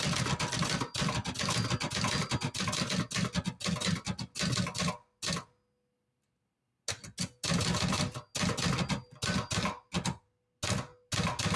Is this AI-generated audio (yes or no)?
no